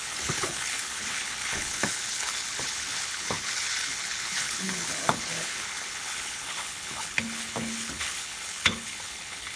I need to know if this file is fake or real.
fake